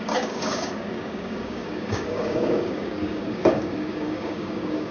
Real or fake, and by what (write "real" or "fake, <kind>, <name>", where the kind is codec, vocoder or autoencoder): fake, codec, DAC